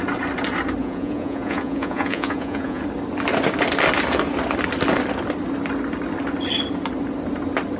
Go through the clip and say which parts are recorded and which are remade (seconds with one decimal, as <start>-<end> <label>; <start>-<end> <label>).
0.0-0.8 recorded; 0.8-2.8 remade; 2.8-7.8 recorded